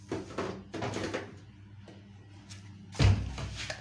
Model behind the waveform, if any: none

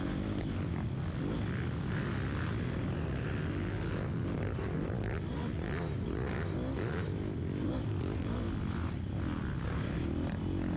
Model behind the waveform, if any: none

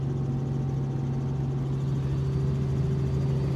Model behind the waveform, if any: none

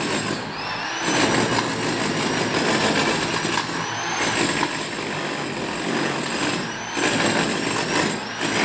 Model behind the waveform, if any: none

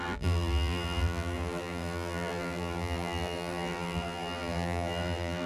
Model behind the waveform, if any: vocoder, BigVGAN v2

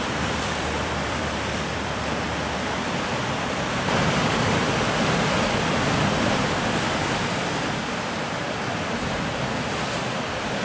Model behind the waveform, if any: vocoder, BigVGAN v2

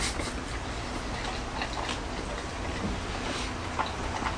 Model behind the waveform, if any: none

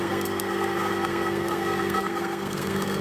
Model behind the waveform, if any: codec, SNAC